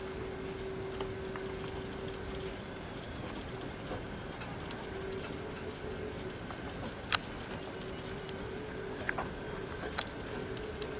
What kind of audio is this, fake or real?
real